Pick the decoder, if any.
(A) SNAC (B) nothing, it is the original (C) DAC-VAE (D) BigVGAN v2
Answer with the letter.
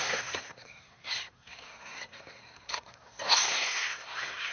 A